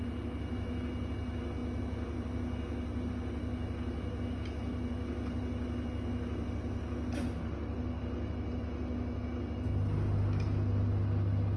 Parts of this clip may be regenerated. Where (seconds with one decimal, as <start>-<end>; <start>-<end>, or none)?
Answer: none